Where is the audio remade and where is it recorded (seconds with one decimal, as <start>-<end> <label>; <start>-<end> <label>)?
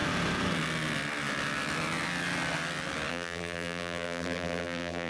0.0-3.1 recorded; 3.1-5.1 remade